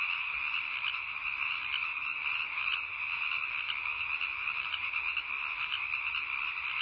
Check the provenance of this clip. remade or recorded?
recorded